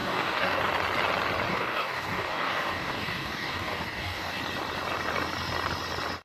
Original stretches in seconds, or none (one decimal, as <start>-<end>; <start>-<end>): 0.6-1.5; 4.4-6.2